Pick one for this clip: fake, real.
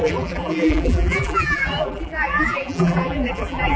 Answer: fake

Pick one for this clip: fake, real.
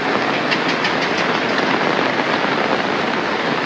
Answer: fake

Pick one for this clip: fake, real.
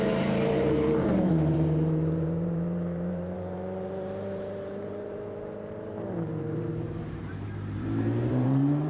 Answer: fake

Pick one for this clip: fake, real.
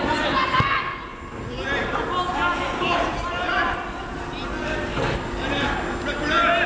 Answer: real